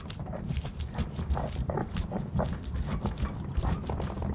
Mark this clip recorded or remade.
recorded